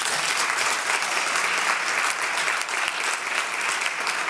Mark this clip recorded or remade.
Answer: recorded